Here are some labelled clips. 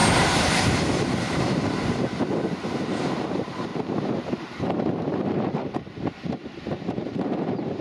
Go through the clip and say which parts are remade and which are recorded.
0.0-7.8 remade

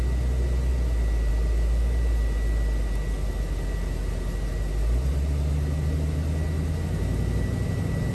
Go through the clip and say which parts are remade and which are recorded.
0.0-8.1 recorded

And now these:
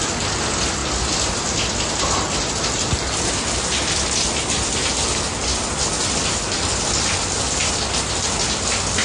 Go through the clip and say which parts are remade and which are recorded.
0.0-0.8 recorded; 0.8-2.2 remade; 2.2-9.0 recorded